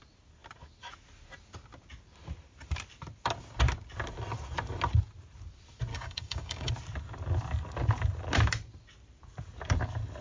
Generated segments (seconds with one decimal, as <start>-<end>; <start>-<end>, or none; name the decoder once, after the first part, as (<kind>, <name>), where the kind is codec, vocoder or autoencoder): 5.9-6.7 (codec, DAC)